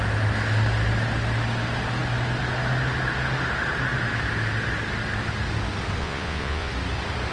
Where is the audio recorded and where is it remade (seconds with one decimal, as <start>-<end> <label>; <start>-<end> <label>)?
0.0-6.0 recorded; 6.0-6.7 remade; 6.7-7.3 recorded